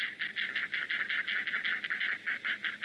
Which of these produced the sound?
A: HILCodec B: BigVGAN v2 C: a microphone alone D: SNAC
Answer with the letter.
C